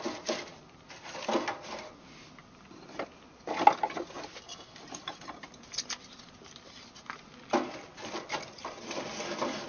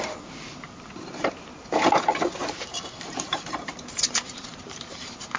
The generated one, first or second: second